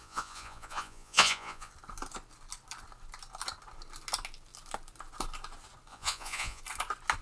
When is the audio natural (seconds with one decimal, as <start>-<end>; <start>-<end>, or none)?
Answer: 1.7-5.9; 6.6-7.2

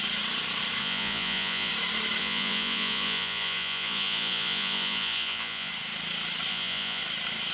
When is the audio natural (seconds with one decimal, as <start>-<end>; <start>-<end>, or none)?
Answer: 0.0-0.8; 1.7-2.2; 5.7-6.5; 7.0-7.5

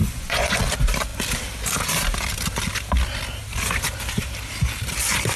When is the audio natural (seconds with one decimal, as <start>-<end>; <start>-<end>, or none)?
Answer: 0.6-5.4

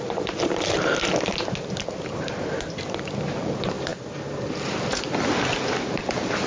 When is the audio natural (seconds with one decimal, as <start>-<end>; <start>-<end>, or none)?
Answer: 0.0-6.5

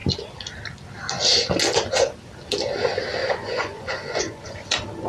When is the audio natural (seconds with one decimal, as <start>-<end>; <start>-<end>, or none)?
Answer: 0.0-3.2; 4.6-5.1

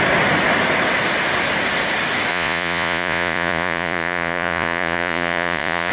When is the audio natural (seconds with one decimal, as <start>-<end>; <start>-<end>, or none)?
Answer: 0.0-2.3

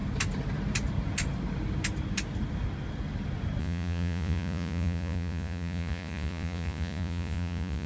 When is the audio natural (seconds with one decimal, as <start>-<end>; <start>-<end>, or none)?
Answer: 0.0-3.6